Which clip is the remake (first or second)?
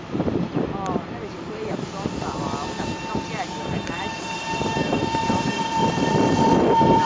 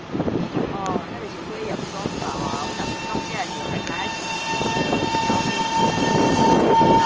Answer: first